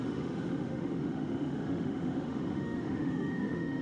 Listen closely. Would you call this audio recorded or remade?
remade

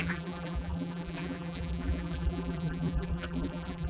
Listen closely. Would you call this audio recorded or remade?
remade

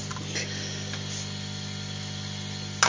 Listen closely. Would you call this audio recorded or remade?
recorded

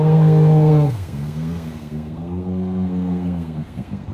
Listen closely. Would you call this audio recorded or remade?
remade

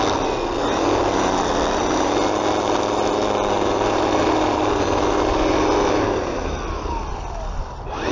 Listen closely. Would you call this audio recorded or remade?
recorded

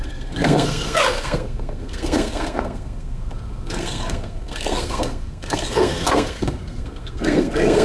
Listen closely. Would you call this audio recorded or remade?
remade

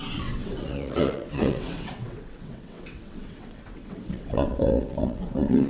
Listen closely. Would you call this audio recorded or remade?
remade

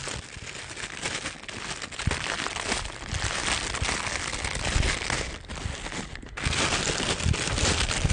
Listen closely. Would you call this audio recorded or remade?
recorded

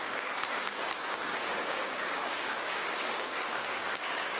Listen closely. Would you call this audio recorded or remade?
remade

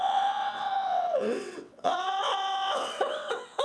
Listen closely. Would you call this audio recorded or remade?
remade